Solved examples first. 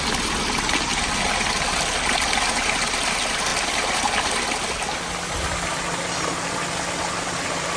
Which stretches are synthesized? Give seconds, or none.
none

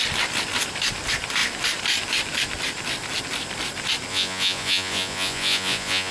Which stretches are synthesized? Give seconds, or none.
4.1-6.1 (vocoder, Vocos)

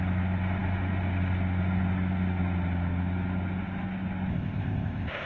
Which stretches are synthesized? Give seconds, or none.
4.3-5.3 (codec, ZipCodec)

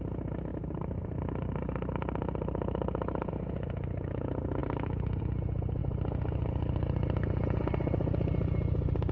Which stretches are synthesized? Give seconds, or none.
0.5-3.3 (vocoder, BigVGAN v2); 4.6-5.2